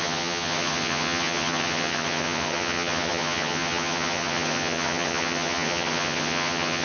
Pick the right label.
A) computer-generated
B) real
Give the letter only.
A